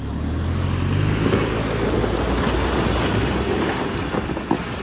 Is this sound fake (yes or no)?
no